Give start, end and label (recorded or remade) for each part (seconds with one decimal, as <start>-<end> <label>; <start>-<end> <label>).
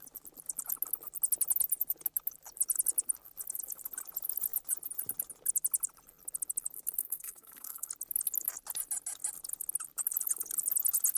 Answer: 0.0-7.0 recorded; 7.0-7.9 remade; 7.9-11.2 recorded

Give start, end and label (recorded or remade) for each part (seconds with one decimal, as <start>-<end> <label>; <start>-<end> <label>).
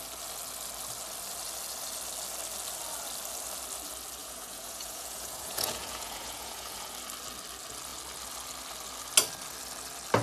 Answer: 0.0-4.2 recorded; 4.2-6.9 remade; 6.9-10.2 recorded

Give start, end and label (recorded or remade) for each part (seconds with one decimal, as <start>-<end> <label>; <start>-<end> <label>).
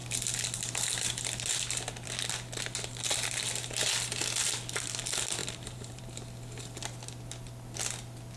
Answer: 0.0-5.4 recorded; 5.4-6.0 remade; 6.0-8.4 recorded